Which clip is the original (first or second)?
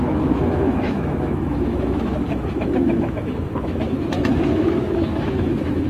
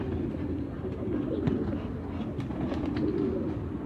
second